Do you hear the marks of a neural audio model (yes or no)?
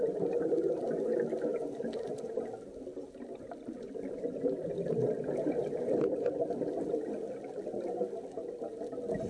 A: no